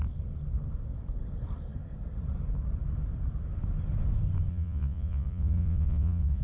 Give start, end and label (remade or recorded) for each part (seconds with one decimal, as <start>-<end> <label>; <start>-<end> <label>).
0.0-4.5 recorded; 4.5-6.4 remade